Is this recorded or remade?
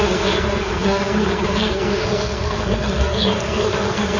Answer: remade